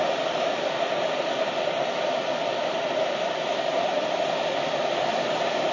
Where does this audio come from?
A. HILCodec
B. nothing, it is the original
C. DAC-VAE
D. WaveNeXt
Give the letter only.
B